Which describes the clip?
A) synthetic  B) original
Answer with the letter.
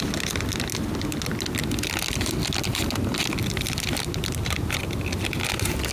B